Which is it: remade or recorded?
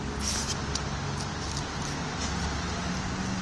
recorded